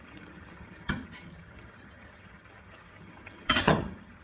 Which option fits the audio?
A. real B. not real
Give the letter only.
B